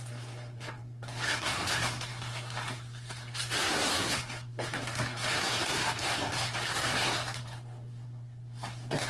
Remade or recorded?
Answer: remade